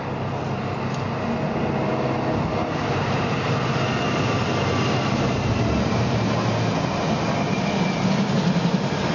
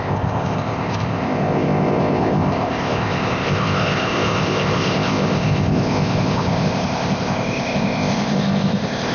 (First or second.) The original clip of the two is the first